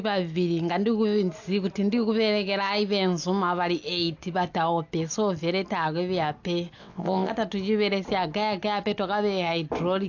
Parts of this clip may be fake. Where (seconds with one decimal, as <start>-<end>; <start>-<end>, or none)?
6.8-7.3